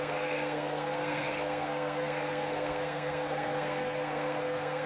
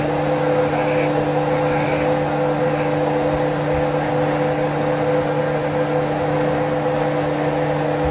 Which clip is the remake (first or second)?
first